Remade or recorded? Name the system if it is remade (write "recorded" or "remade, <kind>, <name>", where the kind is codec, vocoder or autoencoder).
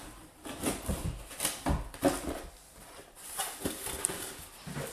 remade, vocoder, BigVGAN v2